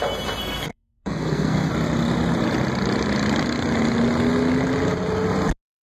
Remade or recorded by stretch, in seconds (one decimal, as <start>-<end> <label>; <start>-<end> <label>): 0.0-0.4 recorded; 0.4-1.7 remade; 1.7-5.8 recorded